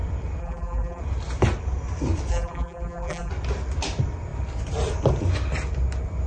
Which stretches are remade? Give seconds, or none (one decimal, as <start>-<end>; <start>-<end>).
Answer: 0.4-1.0; 2.3-3.3